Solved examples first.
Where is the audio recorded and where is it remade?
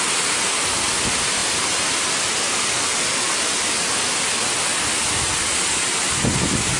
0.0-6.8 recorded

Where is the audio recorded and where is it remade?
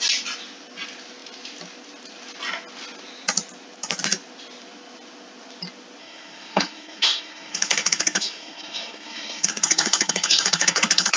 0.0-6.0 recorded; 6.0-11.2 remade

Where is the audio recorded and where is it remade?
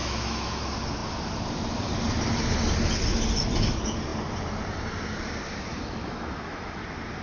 0.0-0.6 remade; 0.6-5.7 recorded; 5.7-6.8 remade; 6.8-7.2 recorded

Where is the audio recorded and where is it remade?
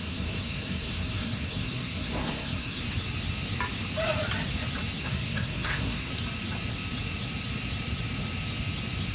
0.0-2.8 remade; 2.8-5.0 recorded; 5.0-6.1 remade; 6.1-9.1 recorded